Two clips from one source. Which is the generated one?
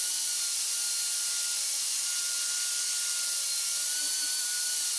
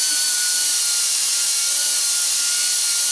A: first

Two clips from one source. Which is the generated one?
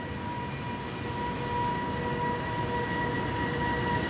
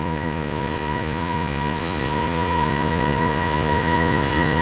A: second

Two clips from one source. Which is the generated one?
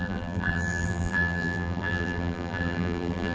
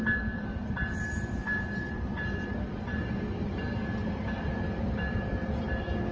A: first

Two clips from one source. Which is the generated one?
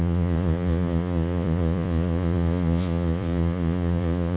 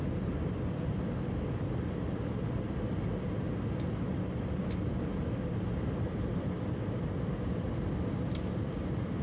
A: first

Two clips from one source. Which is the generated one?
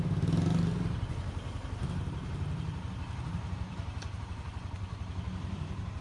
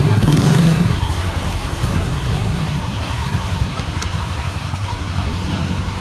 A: second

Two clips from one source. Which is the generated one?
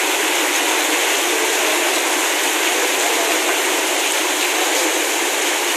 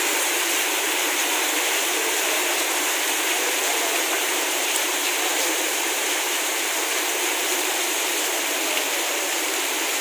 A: second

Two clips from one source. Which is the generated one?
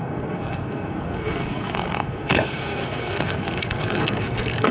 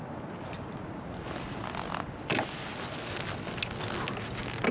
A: first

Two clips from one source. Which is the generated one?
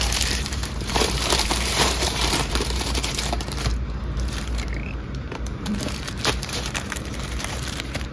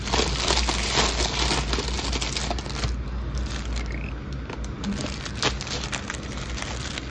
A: first